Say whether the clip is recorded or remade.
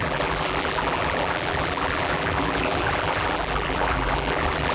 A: remade